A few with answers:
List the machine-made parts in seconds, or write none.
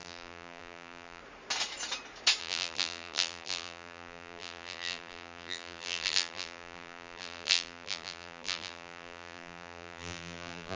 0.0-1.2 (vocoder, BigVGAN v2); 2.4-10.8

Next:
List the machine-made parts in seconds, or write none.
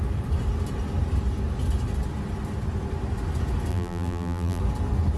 3.7-4.6 (vocoder, BigVGAN v2)